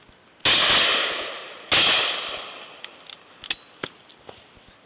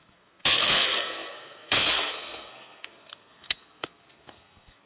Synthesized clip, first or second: second